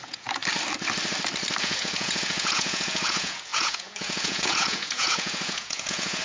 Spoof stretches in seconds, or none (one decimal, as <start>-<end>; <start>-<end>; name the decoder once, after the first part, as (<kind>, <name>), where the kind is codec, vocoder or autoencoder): 0.0-0.4 (vocoder, Vocos); 1.6-6.2